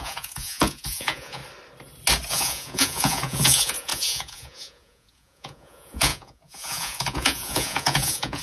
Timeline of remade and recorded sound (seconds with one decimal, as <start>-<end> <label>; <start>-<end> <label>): 0.0-1.4 remade; 1.4-2.3 recorded; 2.3-8.4 remade